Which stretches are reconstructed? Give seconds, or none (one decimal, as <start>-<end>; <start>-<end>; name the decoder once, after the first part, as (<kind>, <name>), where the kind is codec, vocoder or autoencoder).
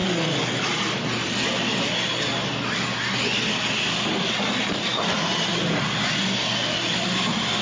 none